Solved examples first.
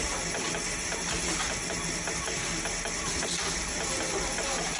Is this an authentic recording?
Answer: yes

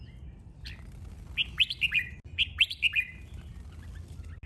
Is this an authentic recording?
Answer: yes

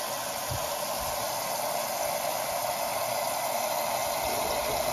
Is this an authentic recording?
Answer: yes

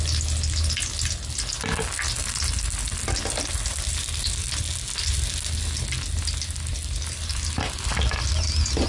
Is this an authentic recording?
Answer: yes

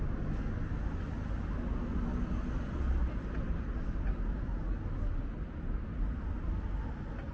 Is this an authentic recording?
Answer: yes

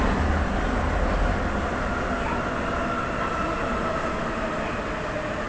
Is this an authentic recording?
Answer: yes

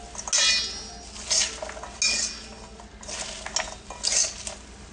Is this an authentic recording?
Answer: yes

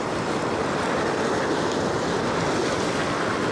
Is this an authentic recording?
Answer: yes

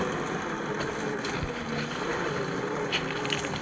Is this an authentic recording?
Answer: yes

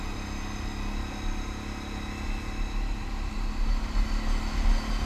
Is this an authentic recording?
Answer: yes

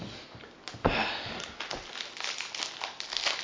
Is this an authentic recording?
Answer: yes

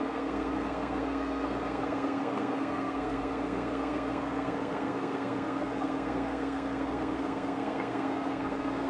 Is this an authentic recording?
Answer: no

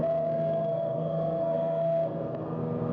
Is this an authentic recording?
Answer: no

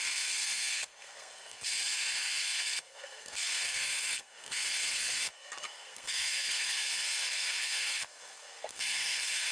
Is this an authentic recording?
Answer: no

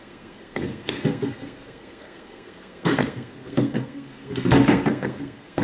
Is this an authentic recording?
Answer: no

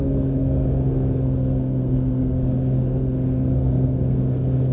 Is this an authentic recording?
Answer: no